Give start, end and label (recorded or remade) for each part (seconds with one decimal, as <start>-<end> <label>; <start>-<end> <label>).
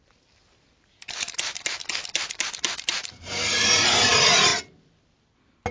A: 0.0-0.7 recorded; 0.7-4.1 remade; 4.1-5.7 recorded